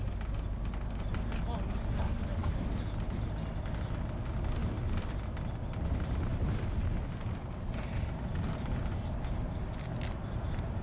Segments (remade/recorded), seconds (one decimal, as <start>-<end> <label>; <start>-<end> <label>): 0.0-10.8 recorded